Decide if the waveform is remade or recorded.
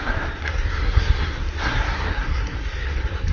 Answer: remade